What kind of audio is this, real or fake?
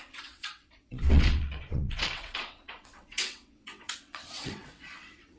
fake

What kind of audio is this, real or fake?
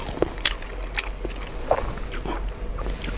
real